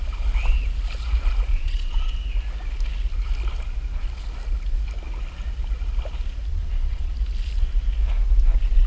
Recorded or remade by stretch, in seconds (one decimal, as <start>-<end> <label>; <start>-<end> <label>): 0.0-1.5 recorded; 1.5-2.1 remade; 2.1-6.5 recorded; 6.5-7.1 remade; 7.1-8.9 recorded